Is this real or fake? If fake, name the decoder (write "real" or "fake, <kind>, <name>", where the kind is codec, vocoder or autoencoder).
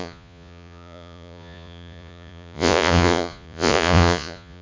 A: fake, vocoder, Vocos